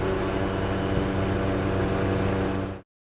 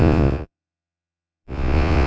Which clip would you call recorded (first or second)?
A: first